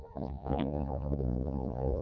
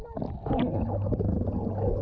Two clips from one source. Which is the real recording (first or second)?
second